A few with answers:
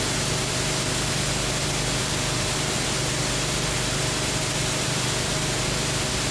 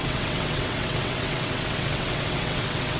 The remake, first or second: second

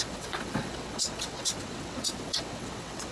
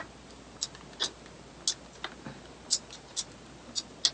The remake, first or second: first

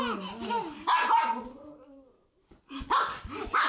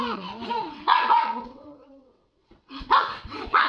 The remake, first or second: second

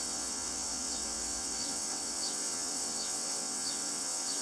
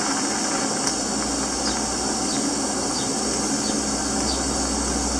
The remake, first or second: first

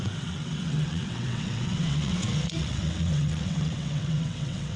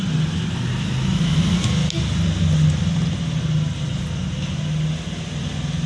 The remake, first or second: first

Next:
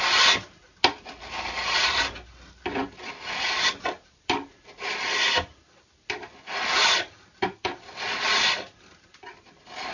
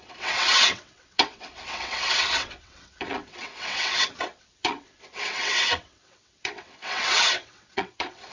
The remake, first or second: second